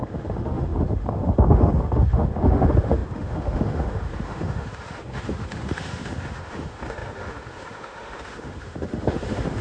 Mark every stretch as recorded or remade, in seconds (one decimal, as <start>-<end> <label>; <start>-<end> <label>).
0.0-9.6 remade

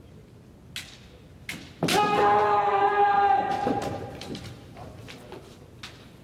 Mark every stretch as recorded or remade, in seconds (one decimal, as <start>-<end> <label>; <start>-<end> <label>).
0.0-2.4 recorded; 2.4-5.0 remade; 5.0-6.2 recorded

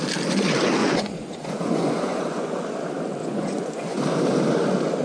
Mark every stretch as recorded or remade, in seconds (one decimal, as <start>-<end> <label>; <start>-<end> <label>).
0.0-0.8 recorded; 0.8-2.6 remade; 2.6-3.2 recorded; 3.2-4.0 remade; 4.0-5.0 recorded

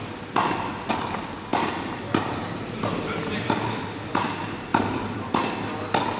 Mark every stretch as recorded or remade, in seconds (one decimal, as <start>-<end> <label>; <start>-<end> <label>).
0.0-1.5 recorded; 1.5-3.5 remade; 3.5-4.7 recorded; 4.7-5.3 remade; 5.3-6.2 recorded